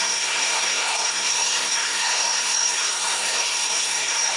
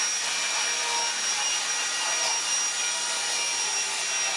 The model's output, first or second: first